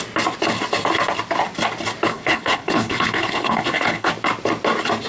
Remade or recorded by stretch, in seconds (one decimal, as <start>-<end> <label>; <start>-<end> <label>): 0.0-2.1 recorded; 2.1-4.1 remade; 4.1-5.1 recorded